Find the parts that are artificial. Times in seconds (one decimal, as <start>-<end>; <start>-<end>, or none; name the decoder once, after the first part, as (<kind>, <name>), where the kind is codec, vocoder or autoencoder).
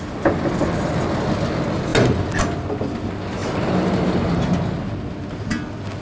3.4-4.5 (vocoder, BigVGAN v2)